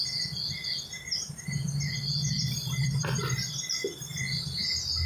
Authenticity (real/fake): real